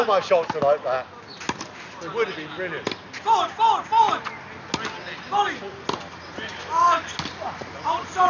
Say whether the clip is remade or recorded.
recorded